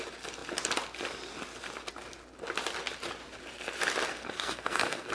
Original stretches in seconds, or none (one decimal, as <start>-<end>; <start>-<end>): 0.0-4.1